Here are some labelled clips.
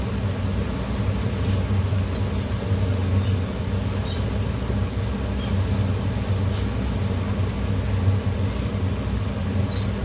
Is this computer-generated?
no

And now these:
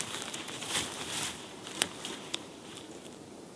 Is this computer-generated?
yes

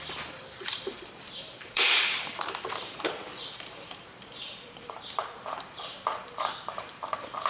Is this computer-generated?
yes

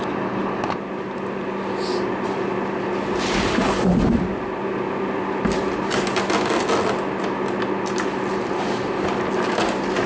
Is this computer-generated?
no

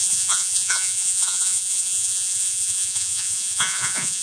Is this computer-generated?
yes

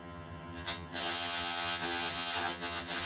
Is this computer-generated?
yes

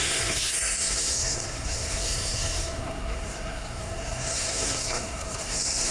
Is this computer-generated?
yes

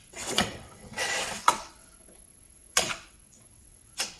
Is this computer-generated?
yes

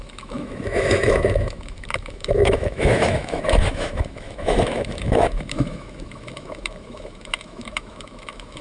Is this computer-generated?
yes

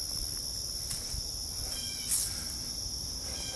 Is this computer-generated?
no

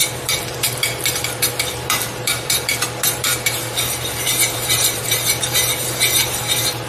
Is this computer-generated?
yes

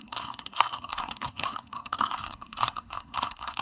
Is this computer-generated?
yes